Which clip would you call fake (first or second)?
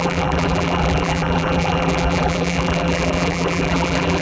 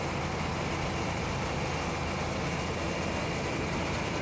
first